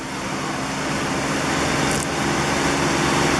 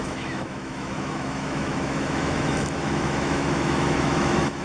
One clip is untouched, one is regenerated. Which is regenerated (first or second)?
second